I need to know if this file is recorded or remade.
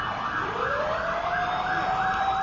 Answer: remade